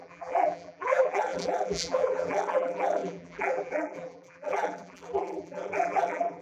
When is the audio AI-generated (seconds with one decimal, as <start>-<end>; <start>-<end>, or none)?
0.0-6.4